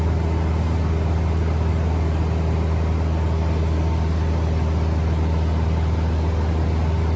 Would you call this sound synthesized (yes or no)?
no